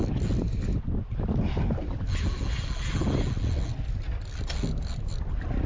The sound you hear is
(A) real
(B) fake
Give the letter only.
A